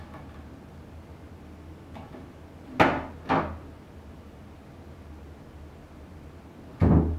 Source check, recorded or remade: recorded